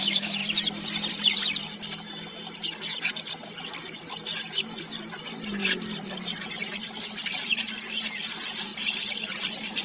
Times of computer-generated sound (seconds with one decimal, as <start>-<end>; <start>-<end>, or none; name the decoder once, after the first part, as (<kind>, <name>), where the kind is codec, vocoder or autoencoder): 0.0-2.6 (vocoder, BigVGAN v2); 3.4-5.6; 6.5-9.8